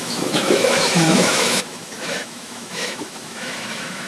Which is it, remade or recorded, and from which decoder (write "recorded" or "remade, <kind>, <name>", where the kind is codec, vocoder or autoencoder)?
remade, autoencoder, DAC-VAE